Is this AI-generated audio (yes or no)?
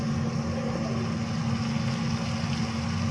no